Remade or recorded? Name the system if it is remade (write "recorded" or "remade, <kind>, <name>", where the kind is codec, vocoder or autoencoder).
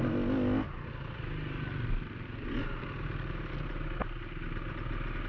recorded